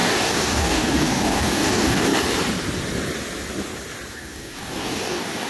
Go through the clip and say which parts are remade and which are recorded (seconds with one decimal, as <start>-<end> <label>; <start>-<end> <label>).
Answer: 0.0-2.1 remade; 2.1-4.1 recorded; 4.1-5.5 remade

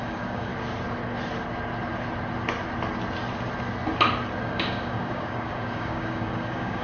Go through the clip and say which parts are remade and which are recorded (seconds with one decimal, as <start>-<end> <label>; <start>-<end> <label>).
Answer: 0.0-0.5 remade; 0.5-4.4 recorded; 4.4-6.8 remade

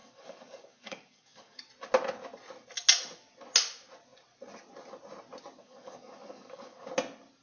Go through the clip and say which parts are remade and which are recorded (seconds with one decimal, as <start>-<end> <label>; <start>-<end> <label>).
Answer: 0.0-1.7 remade; 1.7-5.6 recorded; 5.6-6.9 remade; 6.9-7.4 recorded

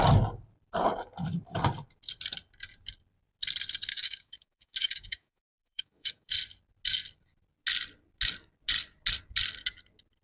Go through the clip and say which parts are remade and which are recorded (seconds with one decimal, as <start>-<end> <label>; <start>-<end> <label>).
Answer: 0.0-3.9 recorded; 3.9-6.3 remade; 6.3-10.2 recorded